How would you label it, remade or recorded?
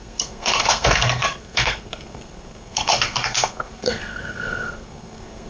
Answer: remade